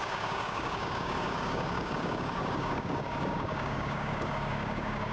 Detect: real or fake fake